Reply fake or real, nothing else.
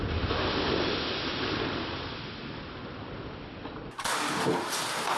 fake